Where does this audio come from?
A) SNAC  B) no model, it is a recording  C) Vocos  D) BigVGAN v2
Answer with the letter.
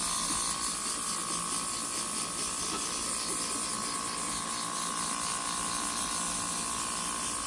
B